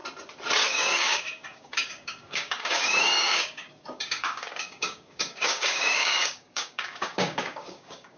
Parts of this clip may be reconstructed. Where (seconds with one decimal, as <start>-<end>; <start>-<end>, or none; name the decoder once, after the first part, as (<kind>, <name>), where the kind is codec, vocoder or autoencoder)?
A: 0.7-8.2 (codec, DAC)